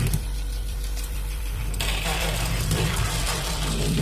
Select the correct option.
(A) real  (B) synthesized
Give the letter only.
B